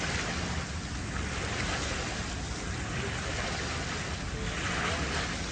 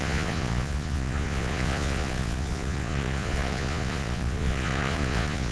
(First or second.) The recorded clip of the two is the first